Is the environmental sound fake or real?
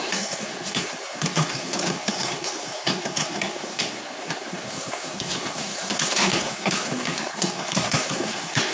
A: fake